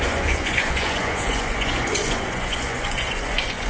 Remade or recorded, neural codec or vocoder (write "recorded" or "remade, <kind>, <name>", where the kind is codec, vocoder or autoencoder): remade, vocoder, Vocos